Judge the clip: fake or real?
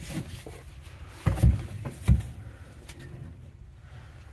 fake